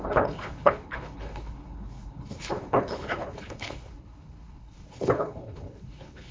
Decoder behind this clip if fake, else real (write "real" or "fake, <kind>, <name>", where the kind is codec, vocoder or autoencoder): fake, codec, HILCodec